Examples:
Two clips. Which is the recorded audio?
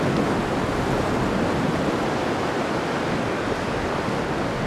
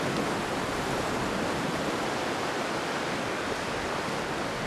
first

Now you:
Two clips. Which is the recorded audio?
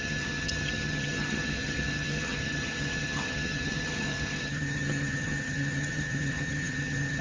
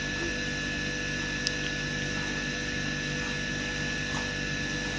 second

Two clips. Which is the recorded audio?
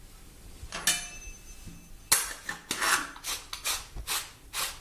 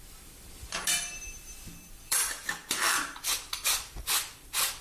first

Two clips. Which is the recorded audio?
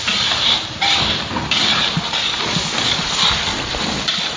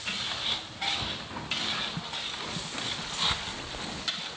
second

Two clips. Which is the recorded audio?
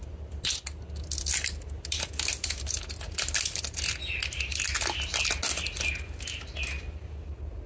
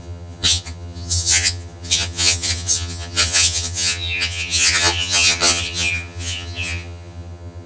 first